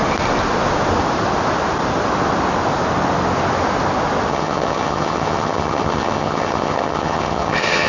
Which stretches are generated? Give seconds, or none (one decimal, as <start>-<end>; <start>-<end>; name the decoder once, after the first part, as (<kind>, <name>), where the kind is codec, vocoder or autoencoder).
4.3-7.9 (vocoder, HiFi-GAN)